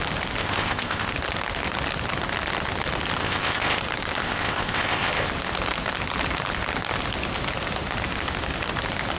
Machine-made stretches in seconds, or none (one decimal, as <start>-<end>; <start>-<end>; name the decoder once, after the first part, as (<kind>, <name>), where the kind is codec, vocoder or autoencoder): 0.4-1.1 (codec, ZipCodec); 3.2-3.8; 4.2-5.3